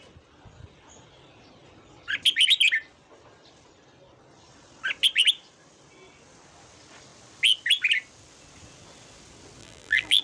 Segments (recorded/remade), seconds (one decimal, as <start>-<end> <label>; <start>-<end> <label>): 0.0-9.6 recorded; 9.6-10.2 remade